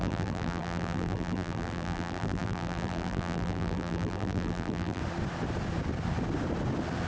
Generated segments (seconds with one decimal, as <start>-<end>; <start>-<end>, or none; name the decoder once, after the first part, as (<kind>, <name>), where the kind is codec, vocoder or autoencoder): 0.0-5.0 (vocoder, BigVGAN v2)